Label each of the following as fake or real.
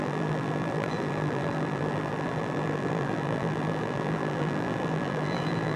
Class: fake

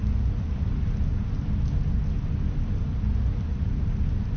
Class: real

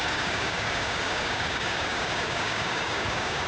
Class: fake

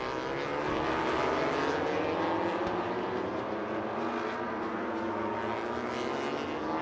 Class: real